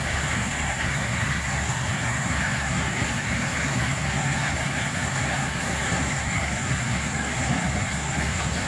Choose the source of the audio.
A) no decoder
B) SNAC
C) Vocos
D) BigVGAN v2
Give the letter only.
B